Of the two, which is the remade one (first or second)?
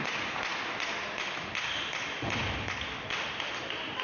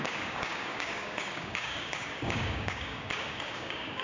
second